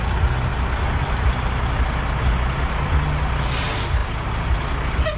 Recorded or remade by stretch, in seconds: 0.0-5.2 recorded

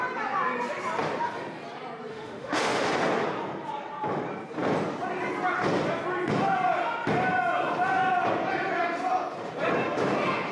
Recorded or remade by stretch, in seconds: 0.0-2.1 recorded; 2.1-2.9 remade; 2.9-10.5 recorded

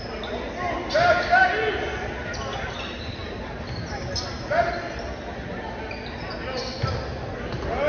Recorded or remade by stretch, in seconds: 0.0-7.9 recorded

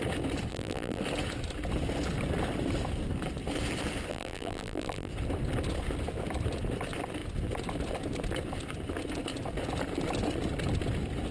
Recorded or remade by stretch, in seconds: 0.0-0.5 recorded; 0.5-1.0 remade; 1.0-4.1 recorded; 4.1-5.1 remade; 5.1-11.3 recorded

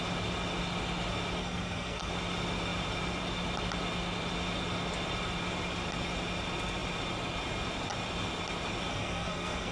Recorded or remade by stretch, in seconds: 0.0-1.4 recorded; 1.4-2.1 remade; 2.1-8.9 recorded; 8.9-9.7 remade

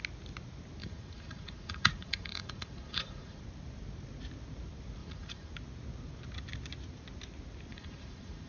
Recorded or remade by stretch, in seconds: 0.0-0.8 recorded; 0.8-3.4 remade; 3.4-5.0 recorded; 5.0-5.5 remade; 5.5-7.7 recorded; 7.7-8.5 remade